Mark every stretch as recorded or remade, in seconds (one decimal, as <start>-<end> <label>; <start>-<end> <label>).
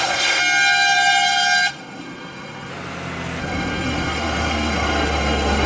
0.0-0.4 remade; 0.4-1.7 recorded; 1.7-2.7 remade; 2.7-3.4 recorded; 3.4-5.7 remade